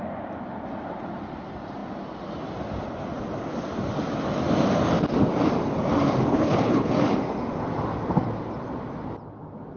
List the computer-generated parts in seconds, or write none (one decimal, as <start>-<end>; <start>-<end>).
6.3-6.9